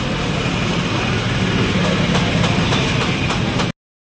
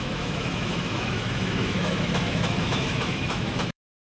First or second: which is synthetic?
second